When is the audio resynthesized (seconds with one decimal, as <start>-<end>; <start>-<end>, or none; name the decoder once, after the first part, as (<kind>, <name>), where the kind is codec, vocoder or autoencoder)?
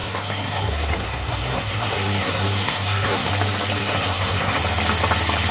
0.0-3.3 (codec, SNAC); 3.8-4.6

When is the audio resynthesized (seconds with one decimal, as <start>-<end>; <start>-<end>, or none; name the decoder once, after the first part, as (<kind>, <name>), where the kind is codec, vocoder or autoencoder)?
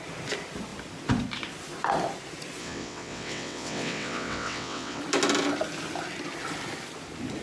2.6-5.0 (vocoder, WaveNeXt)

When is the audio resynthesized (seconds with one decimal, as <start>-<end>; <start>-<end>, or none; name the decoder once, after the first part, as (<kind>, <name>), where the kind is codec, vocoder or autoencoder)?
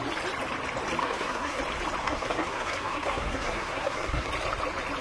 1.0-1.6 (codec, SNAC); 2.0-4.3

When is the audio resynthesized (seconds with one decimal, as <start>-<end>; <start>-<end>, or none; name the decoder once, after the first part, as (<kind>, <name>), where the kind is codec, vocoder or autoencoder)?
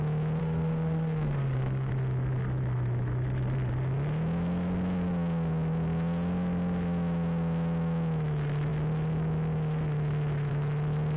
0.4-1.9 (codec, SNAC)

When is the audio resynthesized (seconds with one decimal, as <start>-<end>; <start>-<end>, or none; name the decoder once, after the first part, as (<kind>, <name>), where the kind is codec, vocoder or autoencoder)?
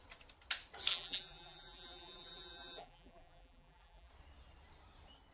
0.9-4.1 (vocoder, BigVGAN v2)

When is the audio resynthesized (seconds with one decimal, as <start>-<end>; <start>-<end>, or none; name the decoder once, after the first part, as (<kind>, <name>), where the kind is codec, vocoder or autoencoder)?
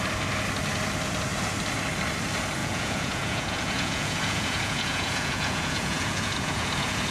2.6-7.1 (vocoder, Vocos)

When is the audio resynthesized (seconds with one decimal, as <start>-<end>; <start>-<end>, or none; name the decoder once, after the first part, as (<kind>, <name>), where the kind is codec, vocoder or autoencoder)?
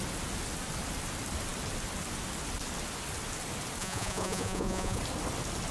3.8-5.0 (vocoder, Vocos)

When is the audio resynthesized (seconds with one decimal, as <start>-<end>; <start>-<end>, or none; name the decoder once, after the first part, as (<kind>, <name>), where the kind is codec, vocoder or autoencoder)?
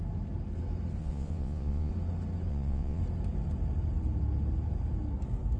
1.0-1.9 (vocoder, Vocos); 2.5-3.0